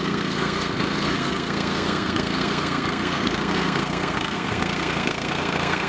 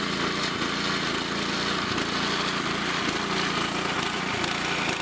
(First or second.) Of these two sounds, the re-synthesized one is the first